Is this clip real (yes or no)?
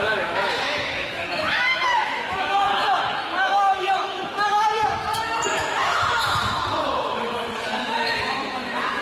no